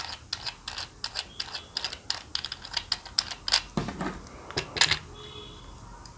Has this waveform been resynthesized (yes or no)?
no